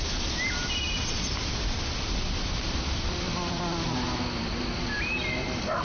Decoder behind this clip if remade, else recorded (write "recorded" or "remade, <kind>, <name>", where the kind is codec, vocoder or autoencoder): recorded